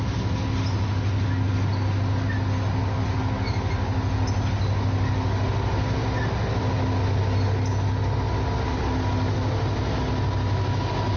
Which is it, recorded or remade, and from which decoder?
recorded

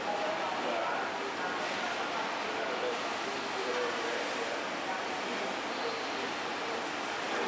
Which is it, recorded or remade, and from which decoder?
recorded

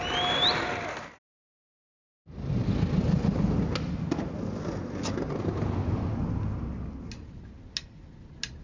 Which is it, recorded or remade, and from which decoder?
recorded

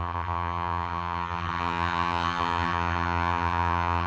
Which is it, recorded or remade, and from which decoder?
remade, vocoder, HiFi-GAN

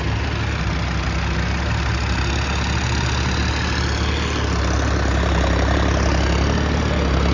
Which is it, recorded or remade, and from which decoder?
recorded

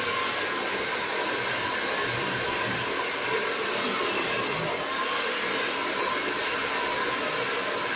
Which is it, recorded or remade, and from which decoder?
recorded